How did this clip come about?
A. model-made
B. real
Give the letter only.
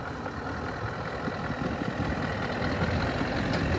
B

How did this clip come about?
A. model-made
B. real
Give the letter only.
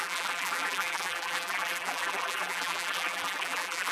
A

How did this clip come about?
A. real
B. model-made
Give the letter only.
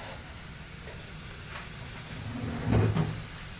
A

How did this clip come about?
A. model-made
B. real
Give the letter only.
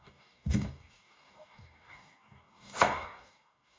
A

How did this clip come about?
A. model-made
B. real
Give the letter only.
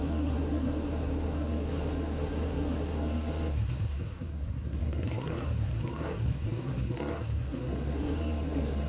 A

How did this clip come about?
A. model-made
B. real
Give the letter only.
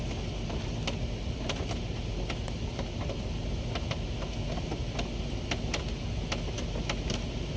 B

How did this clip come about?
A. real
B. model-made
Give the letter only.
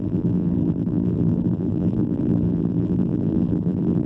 B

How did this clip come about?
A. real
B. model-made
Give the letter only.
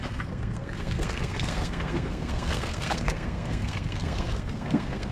B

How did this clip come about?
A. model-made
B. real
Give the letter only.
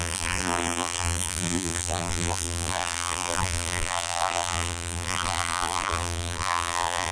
A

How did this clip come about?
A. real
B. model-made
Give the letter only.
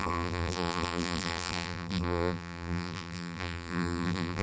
B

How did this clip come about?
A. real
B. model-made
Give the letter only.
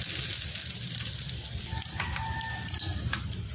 A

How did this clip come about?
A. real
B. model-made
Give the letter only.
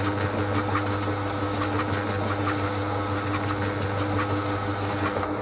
A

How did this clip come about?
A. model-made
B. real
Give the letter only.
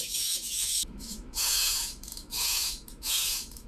A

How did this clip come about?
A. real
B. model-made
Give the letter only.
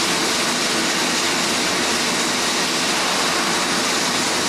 A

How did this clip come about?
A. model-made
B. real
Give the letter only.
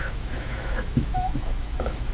A